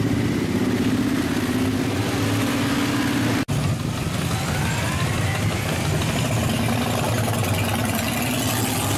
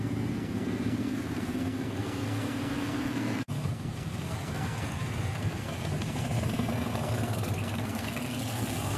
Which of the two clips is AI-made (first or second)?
second